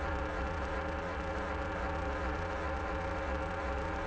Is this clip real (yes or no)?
no